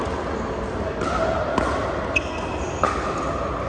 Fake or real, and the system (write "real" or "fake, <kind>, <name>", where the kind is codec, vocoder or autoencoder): real